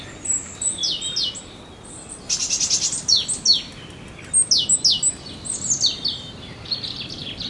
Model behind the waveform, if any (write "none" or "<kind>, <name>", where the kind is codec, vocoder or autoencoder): none